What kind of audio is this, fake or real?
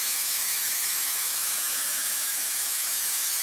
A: fake